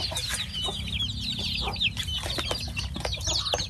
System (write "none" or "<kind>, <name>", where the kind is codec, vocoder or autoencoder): none